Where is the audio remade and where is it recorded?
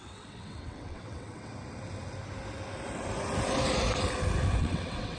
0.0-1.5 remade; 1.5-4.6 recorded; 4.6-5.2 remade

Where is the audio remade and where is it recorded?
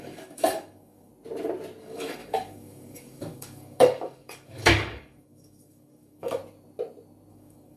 0.0-1.1 remade; 1.1-1.8 recorded; 1.8-6.4 remade; 6.4-7.3 recorded; 7.3-7.8 remade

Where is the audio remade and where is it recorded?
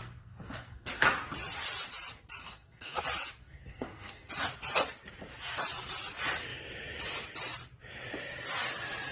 0.0-0.9 remade; 0.9-2.4 recorded; 2.4-3.0 remade; 3.0-3.4 recorded; 3.4-4.3 remade; 4.3-9.1 recorded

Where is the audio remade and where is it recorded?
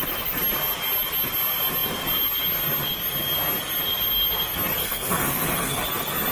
0.0-4.8 recorded; 4.8-5.8 remade; 5.8-6.3 recorded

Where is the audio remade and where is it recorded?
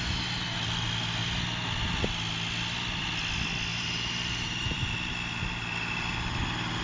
0.0-3.7 recorded; 3.7-4.9 remade; 4.9-6.8 recorded